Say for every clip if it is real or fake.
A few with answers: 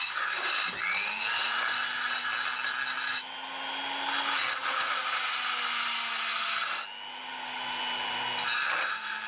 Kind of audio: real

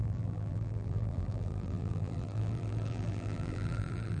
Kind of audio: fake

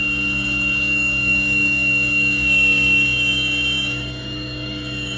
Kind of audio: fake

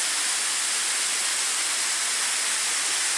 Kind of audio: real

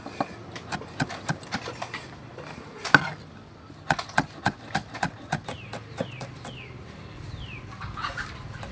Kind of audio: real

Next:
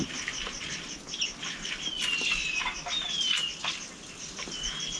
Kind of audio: real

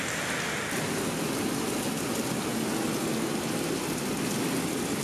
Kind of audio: real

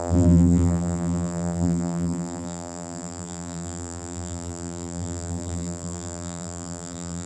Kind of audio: fake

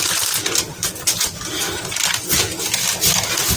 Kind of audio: real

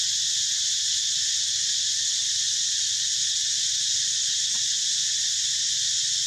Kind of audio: real